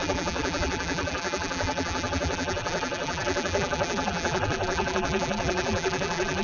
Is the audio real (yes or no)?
no